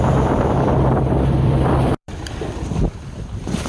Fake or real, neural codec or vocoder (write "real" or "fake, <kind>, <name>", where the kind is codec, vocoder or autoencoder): fake, vocoder, BigVGAN v2